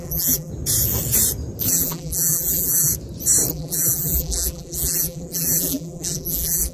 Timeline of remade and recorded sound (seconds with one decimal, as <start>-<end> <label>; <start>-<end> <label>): 0.0-0.5 remade; 0.5-1.7 recorded; 1.7-2.9 remade; 2.9-3.5 recorded; 3.5-6.7 remade